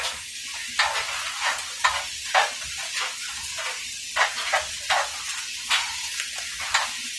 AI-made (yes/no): no